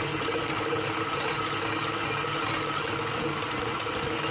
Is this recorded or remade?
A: recorded